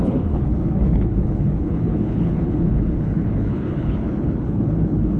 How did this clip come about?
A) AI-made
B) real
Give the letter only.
A